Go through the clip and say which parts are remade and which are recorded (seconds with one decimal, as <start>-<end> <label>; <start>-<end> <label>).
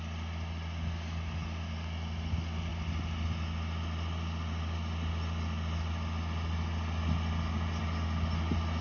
0.0-8.8 recorded